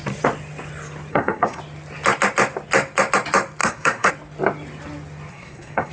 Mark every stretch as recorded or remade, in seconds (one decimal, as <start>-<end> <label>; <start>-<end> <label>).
0.0-1.1 recorded; 1.1-1.6 remade; 1.6-3.6 recorded; 3.6-4.1 remade; 4.1-5.3 recorded; 5.3-5.9 remade